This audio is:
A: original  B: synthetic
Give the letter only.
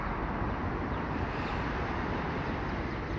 B